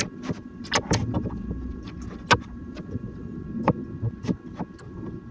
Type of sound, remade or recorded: recorded